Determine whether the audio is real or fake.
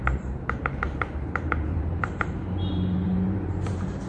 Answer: fake